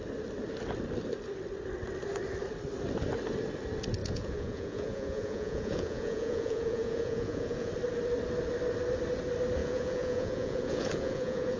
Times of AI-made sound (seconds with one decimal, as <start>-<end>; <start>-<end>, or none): 4.0-7.7; 9.6-11.6